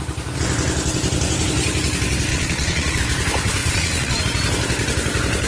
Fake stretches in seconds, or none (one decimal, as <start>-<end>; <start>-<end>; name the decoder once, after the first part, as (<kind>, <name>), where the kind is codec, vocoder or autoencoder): 2.3-3.0 (vocoder, Vocos); 3.6-4.2